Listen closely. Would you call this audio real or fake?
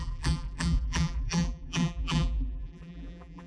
fake